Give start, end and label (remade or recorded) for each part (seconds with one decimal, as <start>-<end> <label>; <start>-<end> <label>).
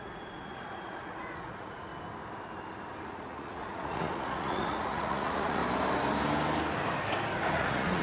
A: 0.0-1.9 remade; 1.9-3.0 recorded; 3.0-5.6 remade; 5.6-7.5 recorded; 7.5-8.0 remade